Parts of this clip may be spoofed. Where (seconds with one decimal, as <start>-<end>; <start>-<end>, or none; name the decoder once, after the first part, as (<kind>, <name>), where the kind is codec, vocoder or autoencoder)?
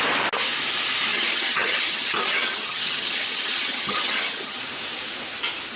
1.1-4.6 (vocoder, HiFi-GAN)